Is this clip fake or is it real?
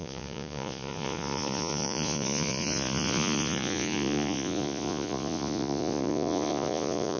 fake